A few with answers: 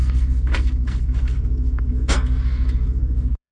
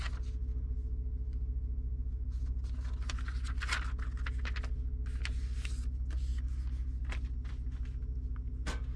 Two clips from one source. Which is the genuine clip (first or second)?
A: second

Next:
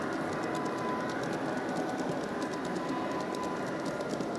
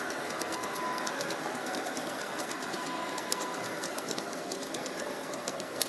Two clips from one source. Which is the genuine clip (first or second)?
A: first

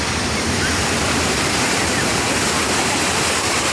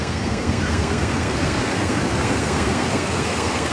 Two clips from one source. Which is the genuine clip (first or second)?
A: first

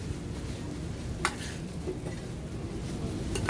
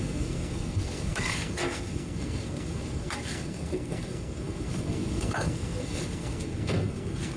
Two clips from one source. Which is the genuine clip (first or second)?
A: first